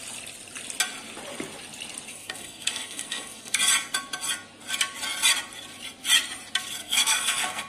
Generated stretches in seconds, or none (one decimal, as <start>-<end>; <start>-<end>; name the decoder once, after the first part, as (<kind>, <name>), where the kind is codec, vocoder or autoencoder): 2.1-3.6 (codec, SNAC); 6.8-7.7